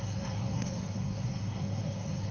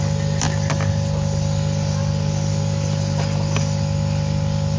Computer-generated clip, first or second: first